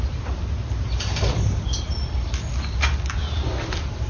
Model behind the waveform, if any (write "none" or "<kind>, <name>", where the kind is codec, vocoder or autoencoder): none